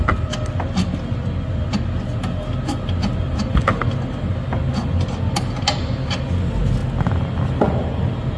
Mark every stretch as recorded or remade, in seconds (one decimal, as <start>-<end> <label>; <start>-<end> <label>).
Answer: 0.0-8.4 recorded